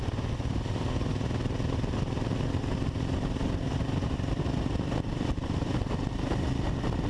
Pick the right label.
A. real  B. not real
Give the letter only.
A